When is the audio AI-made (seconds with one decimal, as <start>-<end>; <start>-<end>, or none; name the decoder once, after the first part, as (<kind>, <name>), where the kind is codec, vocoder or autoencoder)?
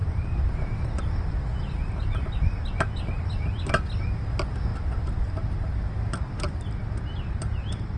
0.0-1.0 (vocoder, BigVGAN v2)